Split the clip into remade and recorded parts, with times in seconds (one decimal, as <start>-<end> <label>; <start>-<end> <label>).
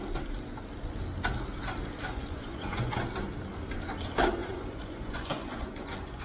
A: 0.0-2.1 recorded; 2.1-3.0 remade; 3.0-4.4 recorded; 4.4-6.2 remade